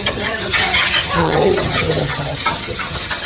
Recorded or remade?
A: remade